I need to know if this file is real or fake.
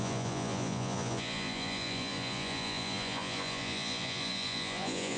fake